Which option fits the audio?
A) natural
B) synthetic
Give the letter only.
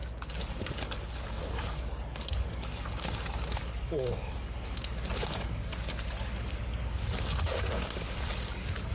B